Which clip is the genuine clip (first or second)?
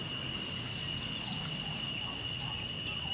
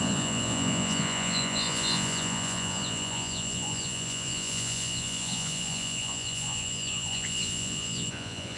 first